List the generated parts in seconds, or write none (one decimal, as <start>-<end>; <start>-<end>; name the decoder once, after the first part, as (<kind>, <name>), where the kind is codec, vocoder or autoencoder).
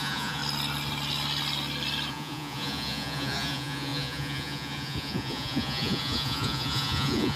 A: 0.0-0.4 (vocoder, Vocos); 2.1-7.4